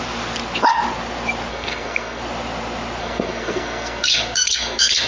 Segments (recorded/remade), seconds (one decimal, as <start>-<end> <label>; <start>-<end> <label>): 0.0-1.5 recorded; 1.5-2.2 remade; 2.2-3.0 recorded; 3.0-5.1 remade